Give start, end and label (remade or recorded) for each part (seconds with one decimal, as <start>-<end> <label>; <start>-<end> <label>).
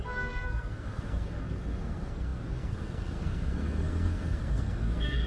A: 0.0-5.3 remade